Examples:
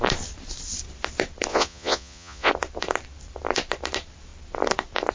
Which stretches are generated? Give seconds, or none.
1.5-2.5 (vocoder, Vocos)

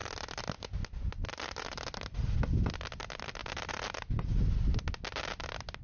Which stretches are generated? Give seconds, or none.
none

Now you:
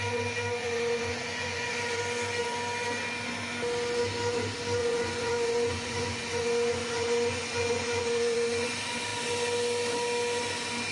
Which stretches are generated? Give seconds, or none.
0.6-1.7 (vocoder, Vocos); 4.8-8.7

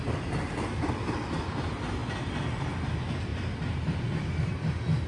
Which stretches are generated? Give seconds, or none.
none